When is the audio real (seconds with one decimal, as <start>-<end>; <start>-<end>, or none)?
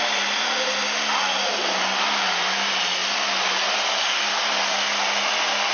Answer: 0.0-5.7